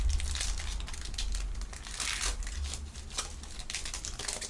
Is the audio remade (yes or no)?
no